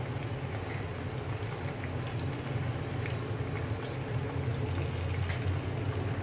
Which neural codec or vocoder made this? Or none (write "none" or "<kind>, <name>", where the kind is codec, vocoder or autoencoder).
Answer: none